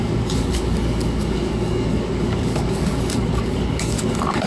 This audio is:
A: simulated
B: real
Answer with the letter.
A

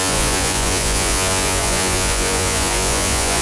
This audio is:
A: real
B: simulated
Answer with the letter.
B